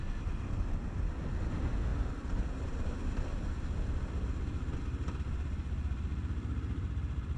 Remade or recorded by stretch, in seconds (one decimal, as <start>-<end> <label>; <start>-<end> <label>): 0.0-1.9 recorded; 1.9-2.5 remade; 2.5-7.4 recorded